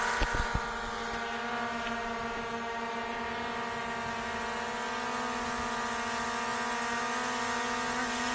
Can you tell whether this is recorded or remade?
recorded